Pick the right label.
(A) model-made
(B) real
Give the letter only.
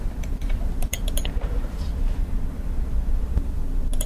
A